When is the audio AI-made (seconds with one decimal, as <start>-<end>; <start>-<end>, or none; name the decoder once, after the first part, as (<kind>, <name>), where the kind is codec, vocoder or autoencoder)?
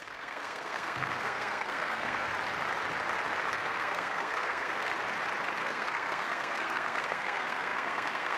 0.0-2.3 (codec, SNAC); 3.5-4.9; 5.6-8.4